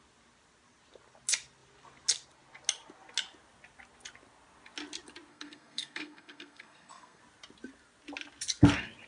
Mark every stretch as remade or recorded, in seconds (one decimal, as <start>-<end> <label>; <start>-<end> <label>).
0.0-5.3 recorded; 5.3-7.2 remade; 7.2-9.1 recorded